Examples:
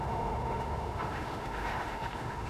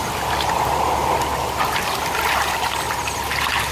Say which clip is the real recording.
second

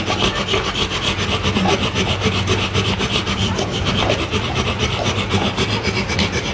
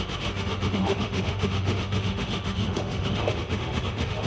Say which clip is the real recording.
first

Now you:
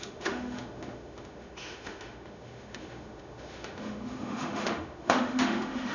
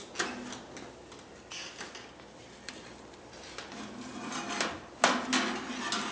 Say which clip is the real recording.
second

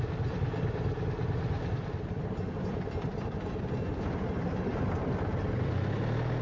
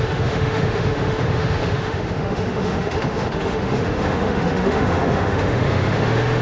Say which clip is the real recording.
first